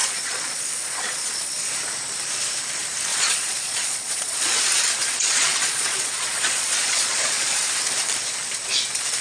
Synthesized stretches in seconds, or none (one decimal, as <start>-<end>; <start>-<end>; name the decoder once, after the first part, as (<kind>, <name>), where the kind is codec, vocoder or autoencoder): 0.0-1.7 (vocoder, Vocos); 3.1-4.6; 5.0-7.6